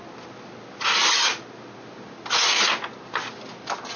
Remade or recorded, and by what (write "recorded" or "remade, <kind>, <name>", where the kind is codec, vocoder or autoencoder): recorded